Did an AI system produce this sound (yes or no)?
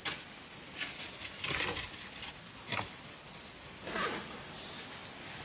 no